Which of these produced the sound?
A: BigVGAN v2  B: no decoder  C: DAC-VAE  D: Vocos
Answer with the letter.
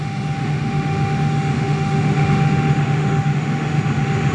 C